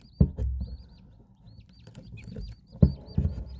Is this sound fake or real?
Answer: real